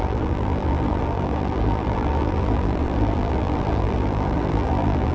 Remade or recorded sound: remade